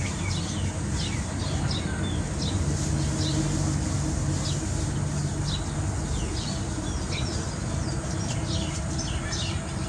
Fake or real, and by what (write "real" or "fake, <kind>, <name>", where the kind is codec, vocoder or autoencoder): real